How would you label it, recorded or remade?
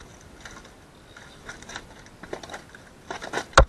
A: recorded